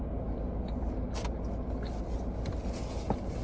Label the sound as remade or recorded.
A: recorded